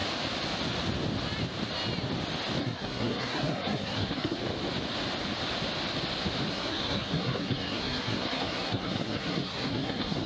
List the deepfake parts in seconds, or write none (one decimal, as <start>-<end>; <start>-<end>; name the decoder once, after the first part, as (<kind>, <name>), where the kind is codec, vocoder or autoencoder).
2.6-4.4 (codec, SNAC); 6.5-10.3